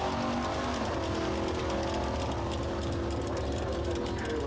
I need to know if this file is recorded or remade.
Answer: recorded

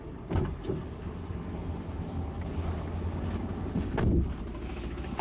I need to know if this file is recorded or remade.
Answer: recorded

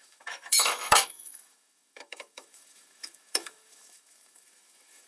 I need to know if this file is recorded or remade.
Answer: remade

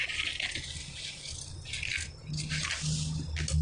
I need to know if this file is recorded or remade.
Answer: recorded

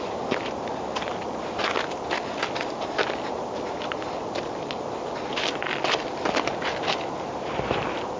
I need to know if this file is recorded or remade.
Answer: recorded